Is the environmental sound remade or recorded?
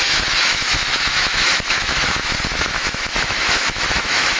remade